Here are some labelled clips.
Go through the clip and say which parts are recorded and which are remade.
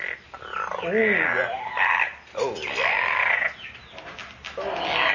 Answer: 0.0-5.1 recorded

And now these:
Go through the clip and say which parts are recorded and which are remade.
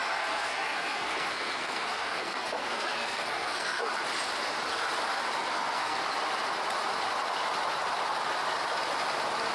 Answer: 0.0-3.9 remade; 3.9-5.4 recorded; 5.4-6.0 remade; 6.0-9.5 recorded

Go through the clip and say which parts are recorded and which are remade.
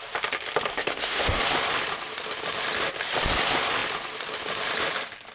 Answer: 0.0-0.7 recorded; 0.7-1.4 remade; 1.4-5.3 recorded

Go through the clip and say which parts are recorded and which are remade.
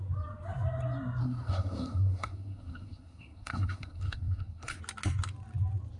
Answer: 0.0-1.2 recorded; 1.2-4.8 remade; 4.8-6.0 recorded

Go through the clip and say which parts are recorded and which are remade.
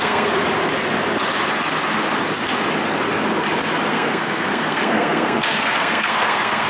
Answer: 0.0-0.4 remade; 0.4-3.9 recorded; 3.9-6.7 remade